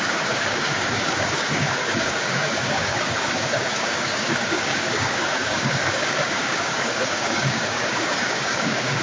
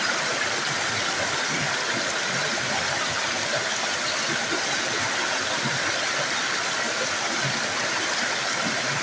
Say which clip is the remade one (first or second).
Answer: first